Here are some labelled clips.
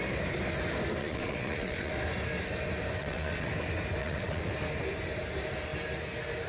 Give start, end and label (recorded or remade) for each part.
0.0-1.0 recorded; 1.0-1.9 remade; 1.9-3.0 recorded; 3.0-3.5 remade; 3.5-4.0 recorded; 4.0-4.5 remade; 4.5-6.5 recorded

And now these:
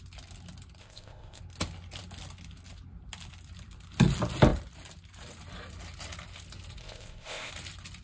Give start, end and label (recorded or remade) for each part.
0.0-0.8 recorded; 0.8-1.4 remade; 1.4-6.8 recorded; 6.8-7.5 remade; 7.5-8.0 recorded

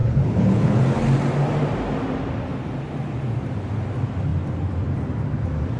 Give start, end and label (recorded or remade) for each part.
0.0-0.8 remade; 0.8-5.8 recorded

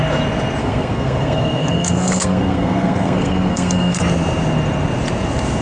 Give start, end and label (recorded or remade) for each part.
0.0-0.6 recorded; 0.6-4.0 remade; 4.0-5.6 recorded

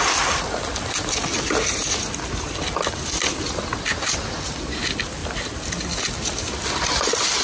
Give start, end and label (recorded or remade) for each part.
0.0-7.4 recorded